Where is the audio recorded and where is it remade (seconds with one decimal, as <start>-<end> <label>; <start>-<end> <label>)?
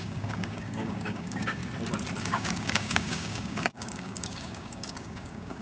0.0-1.6 remade; 1.6-2.2 recorded; 2.2-5.6 remade